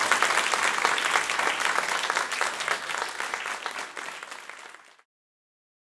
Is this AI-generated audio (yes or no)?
no